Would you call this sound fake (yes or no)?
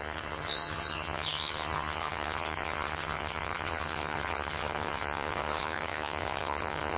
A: yes